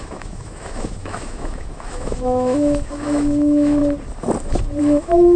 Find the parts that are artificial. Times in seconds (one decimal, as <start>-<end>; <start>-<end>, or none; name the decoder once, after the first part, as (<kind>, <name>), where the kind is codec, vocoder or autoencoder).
0.0-3.8 (autoencoder, DAC-VAE); 4.8-5.4